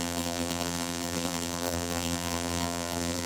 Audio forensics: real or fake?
fake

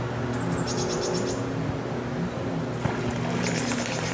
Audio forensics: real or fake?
real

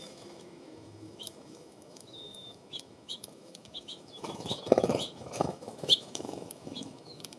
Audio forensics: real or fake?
fake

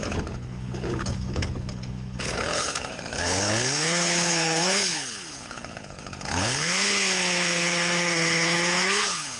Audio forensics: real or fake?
fake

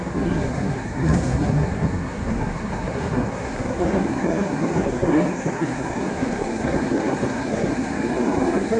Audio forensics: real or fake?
fake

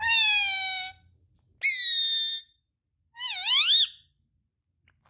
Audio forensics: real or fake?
real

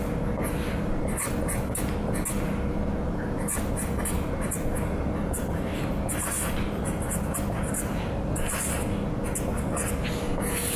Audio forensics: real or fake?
real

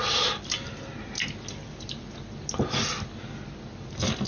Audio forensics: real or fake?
real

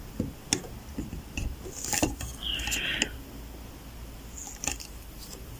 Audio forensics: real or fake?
real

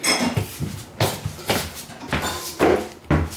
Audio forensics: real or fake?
real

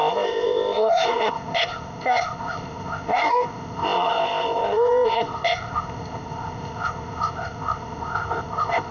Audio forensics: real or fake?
fake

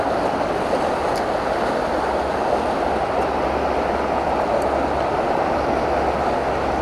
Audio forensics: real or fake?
real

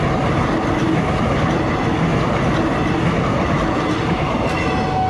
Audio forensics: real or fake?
real